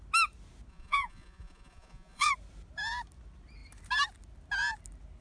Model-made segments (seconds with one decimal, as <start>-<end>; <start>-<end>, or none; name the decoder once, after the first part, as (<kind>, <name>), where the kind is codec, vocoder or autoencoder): 0.7-2.3 (vocoder, Vocos)